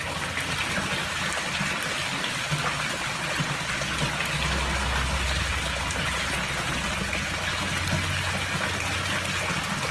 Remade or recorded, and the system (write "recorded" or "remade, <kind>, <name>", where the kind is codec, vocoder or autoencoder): recorded